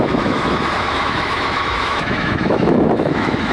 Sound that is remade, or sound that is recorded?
remade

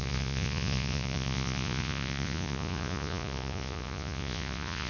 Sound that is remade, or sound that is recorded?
remade